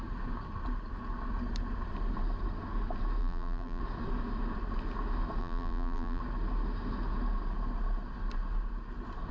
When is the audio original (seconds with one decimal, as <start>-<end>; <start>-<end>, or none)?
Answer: 0.0-3.2; 3.8-5.4; 6.2-9.3